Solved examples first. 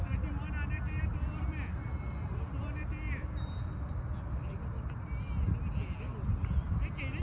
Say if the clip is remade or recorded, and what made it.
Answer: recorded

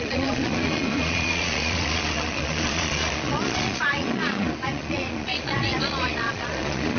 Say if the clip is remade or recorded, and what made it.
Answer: remade, vocoder, Vocos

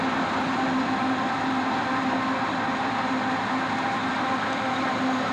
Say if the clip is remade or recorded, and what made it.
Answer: recorded